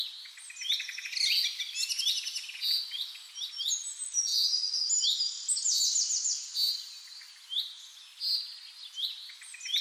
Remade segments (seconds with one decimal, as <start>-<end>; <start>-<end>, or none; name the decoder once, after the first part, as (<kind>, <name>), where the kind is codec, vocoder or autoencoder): none